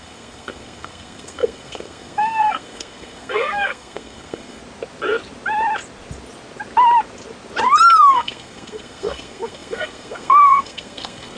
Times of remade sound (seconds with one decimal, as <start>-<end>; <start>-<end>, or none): 0.0-4.6; 8.0-11.4